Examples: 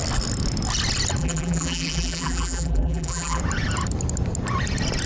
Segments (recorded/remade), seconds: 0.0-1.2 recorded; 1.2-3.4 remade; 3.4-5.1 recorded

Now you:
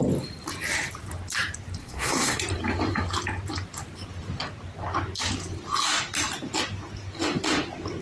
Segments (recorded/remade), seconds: 0.0-1.8 recorded; 1.8-2.4 remade; 2.4-8.0 recorded

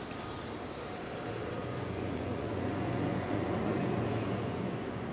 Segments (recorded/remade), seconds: 0.0-1.6 recorded; 1.6-5.1 remade

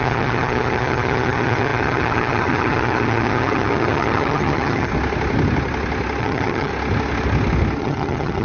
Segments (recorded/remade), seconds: 0.0-4.9 remade; 4.9-6.2 recorded; 6.2-6.7 remade; 6.7-7.8 recorded; 7.8-8.4 remade

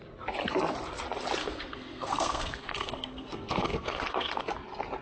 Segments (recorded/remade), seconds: 0.0-1.4 recorded; 1.4-4.4 remade; 4.4-5.0 recorded

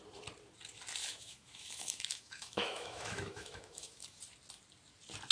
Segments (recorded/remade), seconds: 0.0-1.0 recorded; 1.0-4.2 remade; 4.2-5.3 recorded

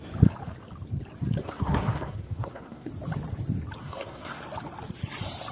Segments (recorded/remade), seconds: 0.0-1.4 recorded; 1.4-2.9 remade; 2.9-3.8 recorded; 3.8-4.4 remade; 4.4-5.5 recorded

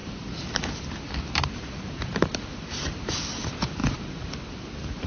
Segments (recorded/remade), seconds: 0.0-3.1 remade; 3.1-5.1 recorded